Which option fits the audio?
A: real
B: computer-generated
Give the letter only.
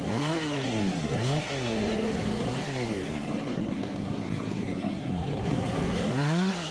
B